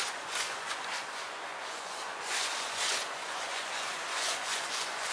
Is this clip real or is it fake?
fake